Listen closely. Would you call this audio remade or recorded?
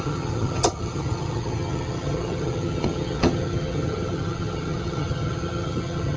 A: remade